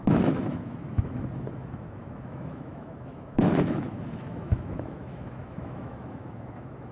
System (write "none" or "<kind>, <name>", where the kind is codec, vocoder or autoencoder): autoencoder, DAC-VAE